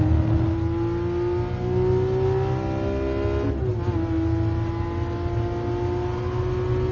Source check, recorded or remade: recorded